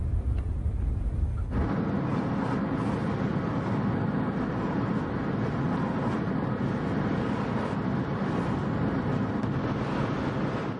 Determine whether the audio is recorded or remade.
recorded